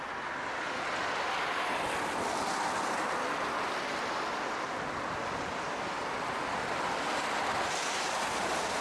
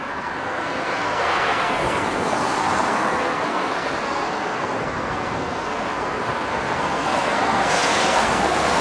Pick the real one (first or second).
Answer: first